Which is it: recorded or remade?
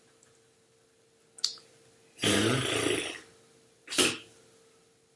recorded